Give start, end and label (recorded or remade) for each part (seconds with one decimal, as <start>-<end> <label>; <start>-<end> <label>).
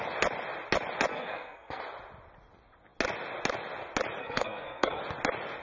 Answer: 0.0-1.1 recorded; 1.1-1.8 remade; 1.8-4.2 recorded; 4.2-5.0 remade; 5.0-5.6 recorded